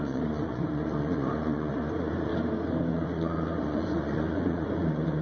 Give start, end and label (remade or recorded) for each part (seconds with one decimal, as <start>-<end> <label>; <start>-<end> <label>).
0.0-2.3 remade; 2.3-2.9 recorded; 2.9-5.2 remade